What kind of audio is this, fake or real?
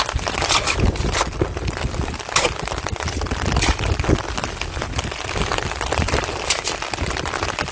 real